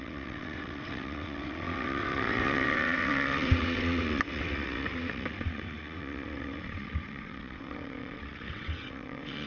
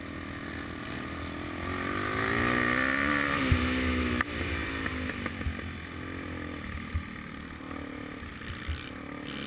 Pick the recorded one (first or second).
second